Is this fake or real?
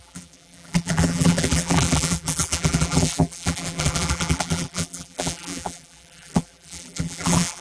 fake